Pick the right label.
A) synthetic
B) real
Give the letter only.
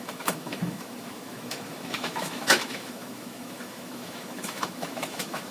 A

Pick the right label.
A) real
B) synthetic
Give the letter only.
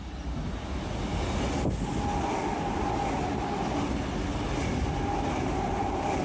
A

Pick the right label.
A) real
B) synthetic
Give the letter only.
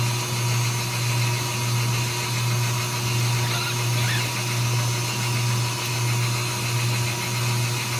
A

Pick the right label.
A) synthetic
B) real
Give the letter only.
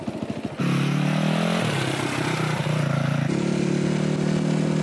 B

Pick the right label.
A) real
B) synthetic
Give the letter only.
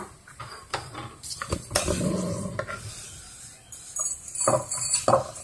A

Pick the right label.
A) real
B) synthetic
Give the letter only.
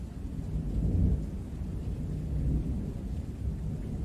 A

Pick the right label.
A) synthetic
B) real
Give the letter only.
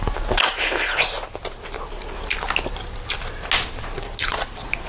B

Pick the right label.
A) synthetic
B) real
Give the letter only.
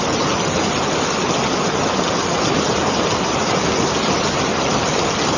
B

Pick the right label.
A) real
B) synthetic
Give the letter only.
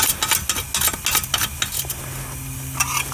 A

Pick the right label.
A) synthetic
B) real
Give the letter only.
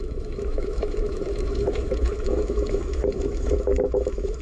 A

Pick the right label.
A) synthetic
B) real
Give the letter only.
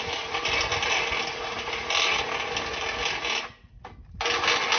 B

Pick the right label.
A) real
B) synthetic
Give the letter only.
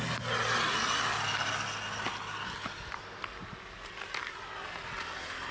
A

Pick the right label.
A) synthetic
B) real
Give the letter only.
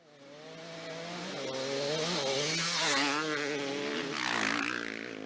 B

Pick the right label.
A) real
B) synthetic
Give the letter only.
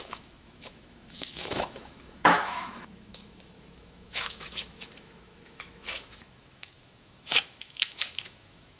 B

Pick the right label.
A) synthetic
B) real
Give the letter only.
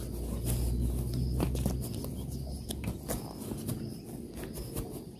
B